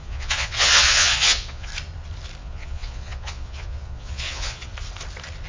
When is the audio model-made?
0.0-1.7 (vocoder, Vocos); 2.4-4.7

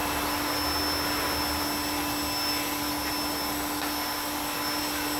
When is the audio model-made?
none

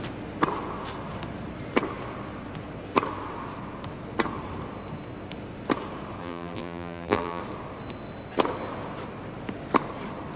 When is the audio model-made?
6.2-7.4 (vocoder, BigVGAN v2)

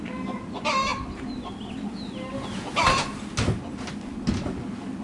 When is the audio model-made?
none

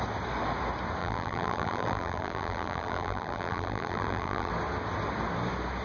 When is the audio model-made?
1.0-4.5 (vocoder, BigVGAN v2)

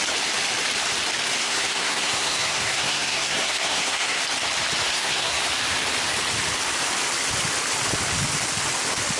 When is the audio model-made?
1.4-4.2 (codec, SNAC); 4.9-5.4

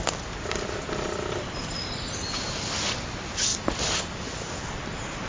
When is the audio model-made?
none